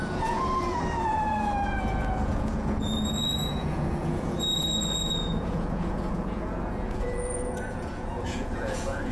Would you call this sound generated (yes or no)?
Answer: yes